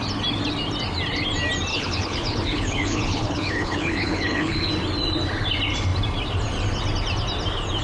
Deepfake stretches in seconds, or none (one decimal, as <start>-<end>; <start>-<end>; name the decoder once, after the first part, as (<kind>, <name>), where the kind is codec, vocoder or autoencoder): 1.7-4.7 (codec, HILCodec)